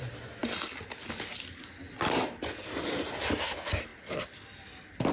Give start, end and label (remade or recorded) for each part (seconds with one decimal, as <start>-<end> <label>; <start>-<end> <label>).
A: 0.0-5.1 recorded